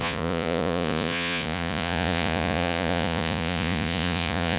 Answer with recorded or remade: remade